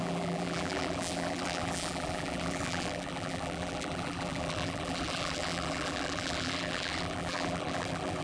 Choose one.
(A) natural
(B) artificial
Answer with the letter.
B